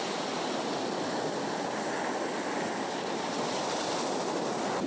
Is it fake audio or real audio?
real